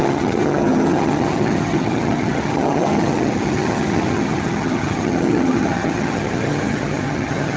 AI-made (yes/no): yes